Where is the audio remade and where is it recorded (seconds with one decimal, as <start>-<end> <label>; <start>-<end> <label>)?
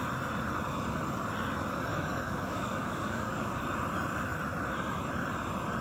0.0-1.9 recorded; 1.9-3.6 remade; 3.6-5.8 recorded